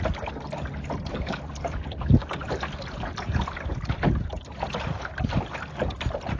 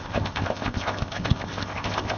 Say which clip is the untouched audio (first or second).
first